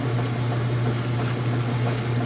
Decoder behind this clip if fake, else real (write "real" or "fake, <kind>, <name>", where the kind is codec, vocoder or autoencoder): real